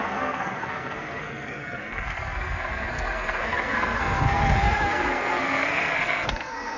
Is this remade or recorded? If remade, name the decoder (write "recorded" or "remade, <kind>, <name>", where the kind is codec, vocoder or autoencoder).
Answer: remade, codec, SNAC